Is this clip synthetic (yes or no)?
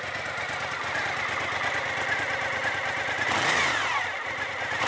no